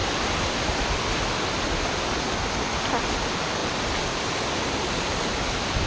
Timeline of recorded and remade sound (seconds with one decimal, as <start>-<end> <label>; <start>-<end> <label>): 0.0-5.9 recorded